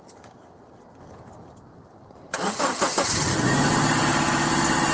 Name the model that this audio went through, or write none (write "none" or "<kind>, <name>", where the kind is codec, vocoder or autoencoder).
vocoder, BigVGAN v2